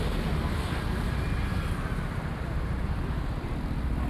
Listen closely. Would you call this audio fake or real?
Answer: real